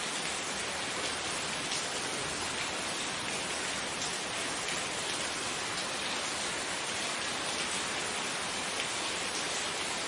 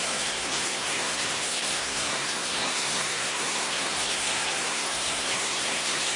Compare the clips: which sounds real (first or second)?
first